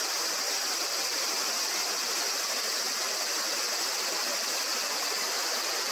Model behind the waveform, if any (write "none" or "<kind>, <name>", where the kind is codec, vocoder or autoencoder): none